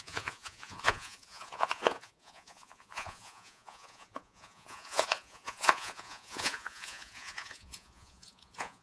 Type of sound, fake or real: fake